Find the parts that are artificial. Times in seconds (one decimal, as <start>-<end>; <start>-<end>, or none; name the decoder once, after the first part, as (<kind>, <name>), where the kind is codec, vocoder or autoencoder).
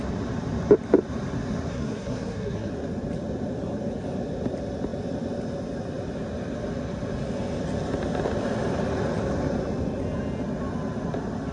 1.7-2.7 (codec, SNAC)